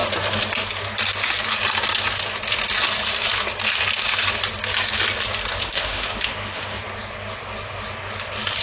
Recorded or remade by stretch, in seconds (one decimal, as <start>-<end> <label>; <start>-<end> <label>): 0.0-5.6 recorded; 5.6-6.8 remade; 6.8-8.6 recorded